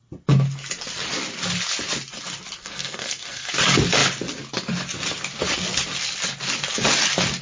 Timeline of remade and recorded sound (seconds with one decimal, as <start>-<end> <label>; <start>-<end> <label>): 0.0-2.6 recorded; 2.6-3.5 remade; 3.5-7.4 recorded